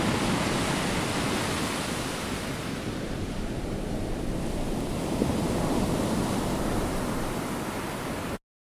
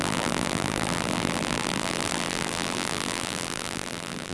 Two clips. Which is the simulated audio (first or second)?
second